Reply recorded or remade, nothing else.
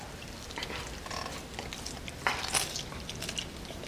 recorded